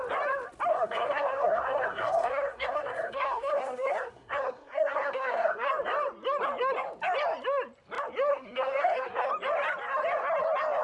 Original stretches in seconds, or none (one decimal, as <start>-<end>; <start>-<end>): 0.0-0.7; 5.7-8.3; 9.3-10.8